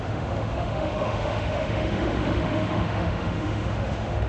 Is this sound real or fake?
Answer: fake